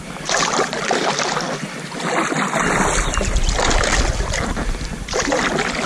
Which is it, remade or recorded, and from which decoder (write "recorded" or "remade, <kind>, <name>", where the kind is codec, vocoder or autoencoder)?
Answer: recorded